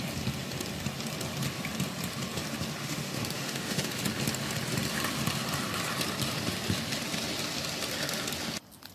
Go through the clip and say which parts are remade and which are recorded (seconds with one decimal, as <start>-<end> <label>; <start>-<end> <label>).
0.0-2.8 recorded; 2.8-3.9 remade; 3.9-8.9 recorded